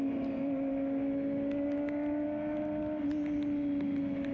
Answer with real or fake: real